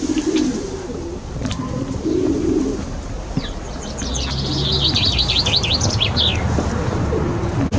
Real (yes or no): yes